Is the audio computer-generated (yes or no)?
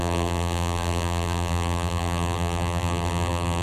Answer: yes